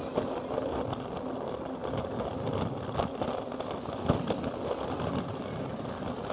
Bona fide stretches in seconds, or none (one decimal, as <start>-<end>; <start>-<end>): 0.0-6.3